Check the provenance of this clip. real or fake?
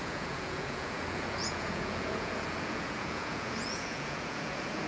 fake